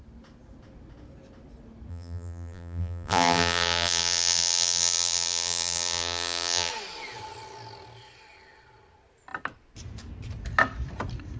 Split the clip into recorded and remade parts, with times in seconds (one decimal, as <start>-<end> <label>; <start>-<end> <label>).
0.0-1.9 recorded; 1.9-6.7 remade; 6.7-11.4 recorded